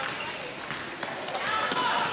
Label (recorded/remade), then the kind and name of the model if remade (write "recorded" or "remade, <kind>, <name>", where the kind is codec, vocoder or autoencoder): recorded